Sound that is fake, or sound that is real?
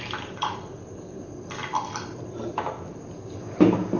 real